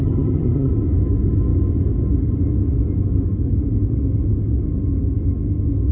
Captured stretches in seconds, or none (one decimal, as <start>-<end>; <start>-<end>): 0.7-5.9